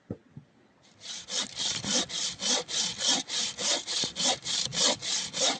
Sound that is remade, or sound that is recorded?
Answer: recorded